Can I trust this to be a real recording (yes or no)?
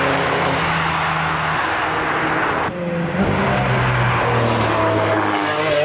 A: yes